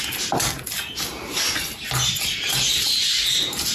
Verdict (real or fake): real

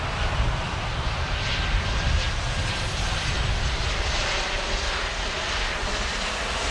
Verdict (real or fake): real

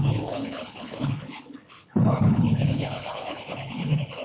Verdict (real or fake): fake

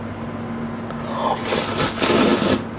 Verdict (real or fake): real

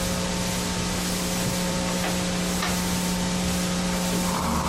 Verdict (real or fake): fake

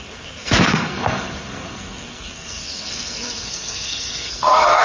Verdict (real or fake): fake